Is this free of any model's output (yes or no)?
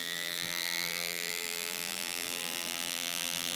no